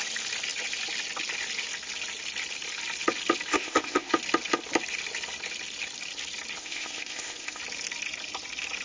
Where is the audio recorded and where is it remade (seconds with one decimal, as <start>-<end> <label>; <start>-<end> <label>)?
0.0-3.5 recorded; 3.5-4.1 remade; 4.1-6.6 recorded; 6.6-7.6 remade; 7.6-8.8 recorded